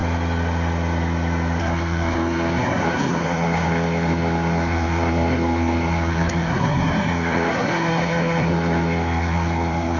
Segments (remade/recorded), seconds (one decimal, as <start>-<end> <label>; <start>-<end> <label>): 0.0-1.6 recorded; 1.6-10.0 remade